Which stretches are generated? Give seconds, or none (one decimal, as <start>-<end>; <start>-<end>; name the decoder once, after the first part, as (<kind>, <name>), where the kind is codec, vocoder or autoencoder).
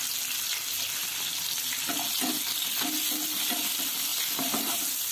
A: none